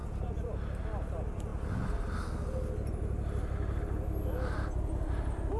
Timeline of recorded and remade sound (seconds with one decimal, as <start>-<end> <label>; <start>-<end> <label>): 0.0-0.8 remade; 0.8-5.6 recorded